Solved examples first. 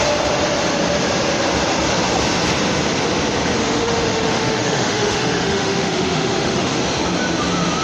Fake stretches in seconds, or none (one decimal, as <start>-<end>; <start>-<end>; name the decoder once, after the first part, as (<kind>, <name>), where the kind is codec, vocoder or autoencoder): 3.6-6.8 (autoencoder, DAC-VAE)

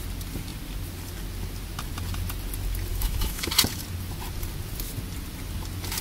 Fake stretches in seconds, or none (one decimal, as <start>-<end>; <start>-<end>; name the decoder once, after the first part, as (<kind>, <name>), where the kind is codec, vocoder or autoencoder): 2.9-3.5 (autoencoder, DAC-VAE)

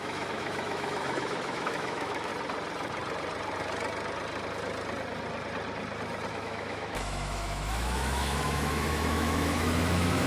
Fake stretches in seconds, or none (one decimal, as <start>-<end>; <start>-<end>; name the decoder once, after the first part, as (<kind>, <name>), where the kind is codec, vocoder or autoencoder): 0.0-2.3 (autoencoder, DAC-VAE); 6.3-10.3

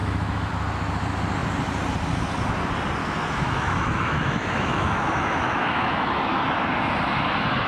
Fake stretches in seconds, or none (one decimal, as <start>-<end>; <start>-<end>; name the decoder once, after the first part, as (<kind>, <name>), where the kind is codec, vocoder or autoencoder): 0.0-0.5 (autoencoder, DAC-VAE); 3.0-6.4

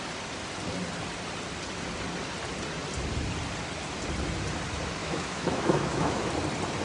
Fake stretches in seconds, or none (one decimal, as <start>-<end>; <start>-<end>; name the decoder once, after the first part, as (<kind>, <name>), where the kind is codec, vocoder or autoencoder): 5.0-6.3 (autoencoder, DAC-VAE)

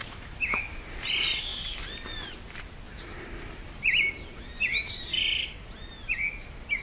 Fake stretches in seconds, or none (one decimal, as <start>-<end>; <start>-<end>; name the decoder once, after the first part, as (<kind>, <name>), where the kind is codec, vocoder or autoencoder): 0.0-0.7 (autoencoder, DAC-VAE)

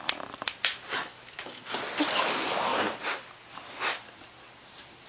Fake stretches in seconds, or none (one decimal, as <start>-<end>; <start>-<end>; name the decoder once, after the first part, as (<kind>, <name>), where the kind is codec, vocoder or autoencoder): 1.1-1.6 (autoencoder, DAC-VAE)